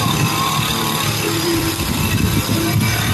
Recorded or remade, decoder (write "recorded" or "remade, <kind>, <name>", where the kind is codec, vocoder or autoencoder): remade, vocoder, BigVGAN v2